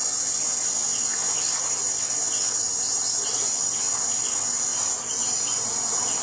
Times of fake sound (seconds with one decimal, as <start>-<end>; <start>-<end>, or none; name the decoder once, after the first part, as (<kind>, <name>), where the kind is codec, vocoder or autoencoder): 2.7-3.9 (vocoder, BigVGAN v2); 4.7-6.2